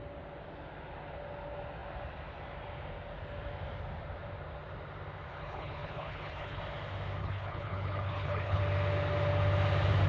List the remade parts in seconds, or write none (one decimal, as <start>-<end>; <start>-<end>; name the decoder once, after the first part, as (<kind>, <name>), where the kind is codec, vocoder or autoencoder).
5.3-6.6 (codec, HILCodec); 7.2-8.6